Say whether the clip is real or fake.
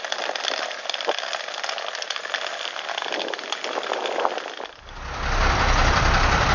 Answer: real